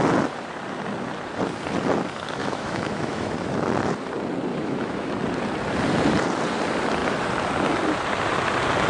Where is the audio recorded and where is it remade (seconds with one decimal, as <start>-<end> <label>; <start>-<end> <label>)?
0.0-2.4 recorded; 2.4-3.3 remade; 3.3-4.5 recorded; 4.5-5.1 remade; 5.1-8.9 recorded